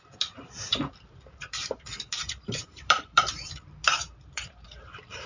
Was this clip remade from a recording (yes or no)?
yes